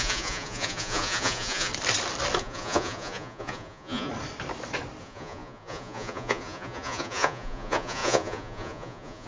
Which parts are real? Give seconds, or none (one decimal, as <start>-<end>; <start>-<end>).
1.7-2.4; 4.1-5.0